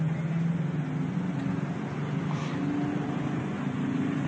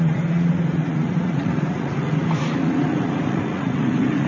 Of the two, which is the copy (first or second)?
second